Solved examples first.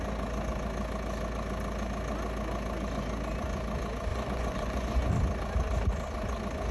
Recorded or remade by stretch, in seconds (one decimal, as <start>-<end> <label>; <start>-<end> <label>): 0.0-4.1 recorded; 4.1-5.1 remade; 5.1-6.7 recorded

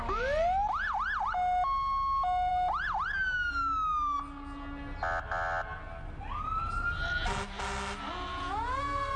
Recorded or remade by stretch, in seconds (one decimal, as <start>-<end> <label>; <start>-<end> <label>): 0.0-8.3 recorded; 8.3-9.2 remade

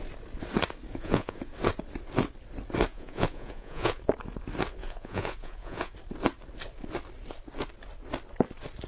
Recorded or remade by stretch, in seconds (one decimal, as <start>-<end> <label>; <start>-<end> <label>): 0.0-0.9 recorded; 0.9-1.5 remade; 1.5-2.9 recorded; 2.9-4.0 remade; 4.0-4.8 recorded; 4.8-5.9 remade; 5.9-8.9 recorded

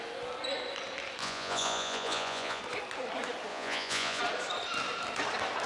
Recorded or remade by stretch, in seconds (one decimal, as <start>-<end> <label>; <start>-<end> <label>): 0.0-1.2 recorded; 1.2-2.6 remade; 2.6-3.5 recorded; 3.5-4.2 remade; 4.2-5.7 recorded

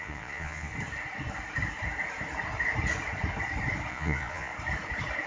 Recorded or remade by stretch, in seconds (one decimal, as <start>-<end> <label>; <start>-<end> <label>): 0.0-0.7 remade; 0.7-3.9 recorded; 3.9-4.5 remade; 4.5-5.3 recorded

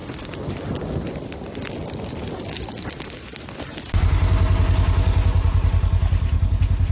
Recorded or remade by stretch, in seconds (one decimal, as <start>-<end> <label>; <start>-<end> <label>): 0.0-6.9 recorded

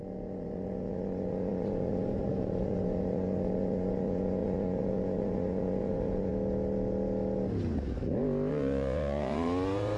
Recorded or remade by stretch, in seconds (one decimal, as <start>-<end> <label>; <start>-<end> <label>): 0.0-6.3 remade; 6.3-8.5 recorded; 8.5-10.0 remade